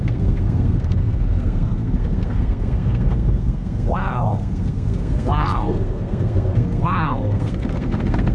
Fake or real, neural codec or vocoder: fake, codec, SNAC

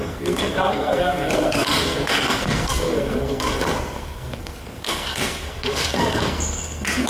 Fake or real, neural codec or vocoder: fake, codec, SNAC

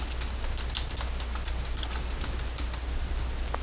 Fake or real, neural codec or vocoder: real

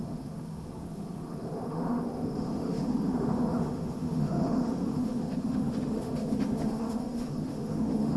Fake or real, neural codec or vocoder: fake, autoencoder, DAC-VAE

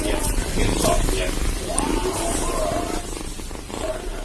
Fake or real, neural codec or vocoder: real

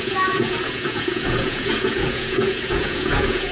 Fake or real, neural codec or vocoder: fake, vocoder, Vocos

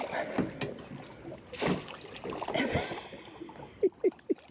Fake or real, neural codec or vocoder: real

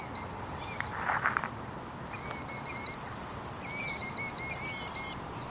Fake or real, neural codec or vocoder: real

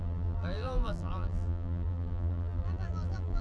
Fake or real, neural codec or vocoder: fake, vocoder, BigVGAN v2